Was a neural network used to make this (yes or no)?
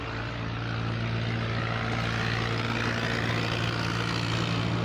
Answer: no